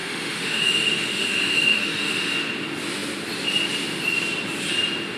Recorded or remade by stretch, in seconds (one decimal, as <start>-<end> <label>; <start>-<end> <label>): 0.0-2.3 remade; 2.3-5.2 recorded